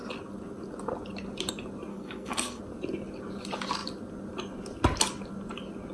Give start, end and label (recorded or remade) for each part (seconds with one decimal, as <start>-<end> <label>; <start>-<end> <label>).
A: 0.0-1.9 recorded; 1.9-2.6 remade; 2.6-5.9 recorded